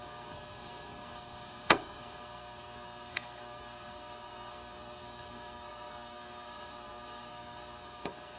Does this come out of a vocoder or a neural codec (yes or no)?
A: yes